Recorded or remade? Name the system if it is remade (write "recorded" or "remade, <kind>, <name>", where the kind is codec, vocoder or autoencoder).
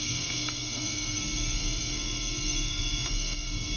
remade, codec, SNAC